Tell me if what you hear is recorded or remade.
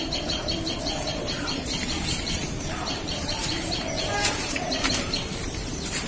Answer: remade